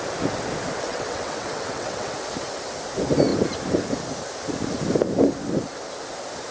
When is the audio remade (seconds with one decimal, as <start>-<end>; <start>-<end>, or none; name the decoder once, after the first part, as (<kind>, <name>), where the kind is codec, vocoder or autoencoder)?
0.9-2.1 (vocoder, WaveNeXt)

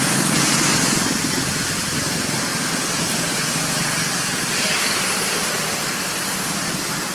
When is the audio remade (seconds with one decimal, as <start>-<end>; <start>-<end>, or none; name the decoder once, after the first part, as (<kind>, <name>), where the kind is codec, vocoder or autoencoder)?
none

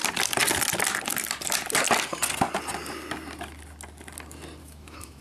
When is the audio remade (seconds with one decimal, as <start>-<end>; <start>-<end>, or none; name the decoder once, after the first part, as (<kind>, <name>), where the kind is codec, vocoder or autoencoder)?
4.6-5.2 (autoencoder, DAC-VAE)

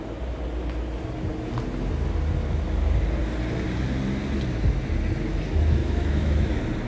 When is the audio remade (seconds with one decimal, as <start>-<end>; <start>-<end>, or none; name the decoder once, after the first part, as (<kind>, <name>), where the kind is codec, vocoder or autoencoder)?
5.8-6.5 (autoencoder, DAC-VAE)

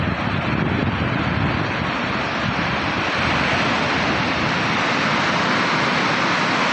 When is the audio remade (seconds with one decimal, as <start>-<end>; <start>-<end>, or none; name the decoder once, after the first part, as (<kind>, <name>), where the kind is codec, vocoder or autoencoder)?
none

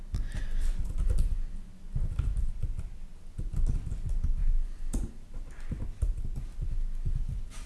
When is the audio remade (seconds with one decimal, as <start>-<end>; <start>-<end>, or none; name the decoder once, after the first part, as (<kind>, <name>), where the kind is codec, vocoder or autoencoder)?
5.8-6.6 (vocoder, BigVGAN v2)

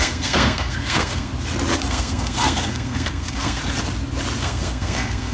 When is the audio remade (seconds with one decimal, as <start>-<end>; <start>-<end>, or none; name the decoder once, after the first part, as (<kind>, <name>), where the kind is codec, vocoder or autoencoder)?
0.0-1.3 (codec, SNAC); 1.9-3.6; 4.4-5.3

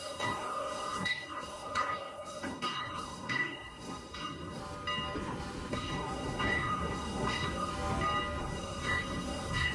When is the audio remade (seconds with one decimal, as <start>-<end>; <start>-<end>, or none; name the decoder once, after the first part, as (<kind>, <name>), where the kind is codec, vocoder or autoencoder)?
0.0-4.6 (codec, SNAC); 5.7-7.7; 8.4-9.7